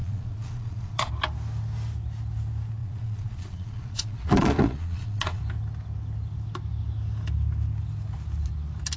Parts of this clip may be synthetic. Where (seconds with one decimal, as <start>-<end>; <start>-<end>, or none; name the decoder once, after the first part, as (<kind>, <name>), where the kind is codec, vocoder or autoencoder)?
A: 0.0-1.1 (vocoder, Vocos); 2.8-5.4